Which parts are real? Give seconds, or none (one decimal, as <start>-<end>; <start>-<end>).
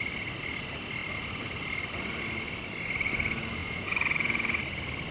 0.0-3.6; 4.6-5.1